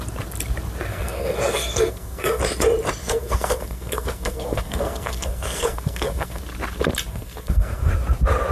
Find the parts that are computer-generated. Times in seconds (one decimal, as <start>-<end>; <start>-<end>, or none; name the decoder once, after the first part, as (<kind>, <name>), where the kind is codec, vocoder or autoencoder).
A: 0.9-2.4 (codec, SNAC); 3.0-6.4; 7.1-7.9